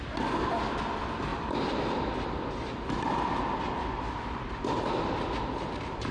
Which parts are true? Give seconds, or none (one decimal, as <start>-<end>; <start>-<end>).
0.0-6.1